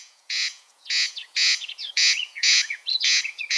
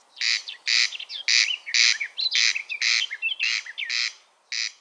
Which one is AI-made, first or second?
first